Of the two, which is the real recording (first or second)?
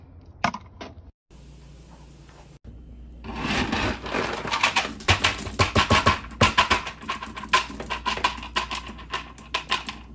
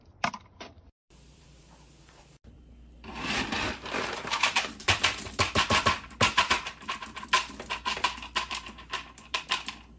first